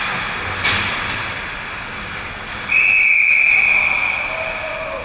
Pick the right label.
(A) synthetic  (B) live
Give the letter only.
B